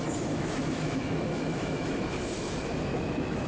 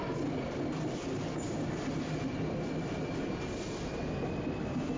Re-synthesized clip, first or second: first